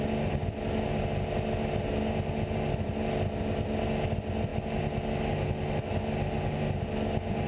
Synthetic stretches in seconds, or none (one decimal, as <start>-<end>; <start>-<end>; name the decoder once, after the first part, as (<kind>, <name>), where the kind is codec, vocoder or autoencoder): none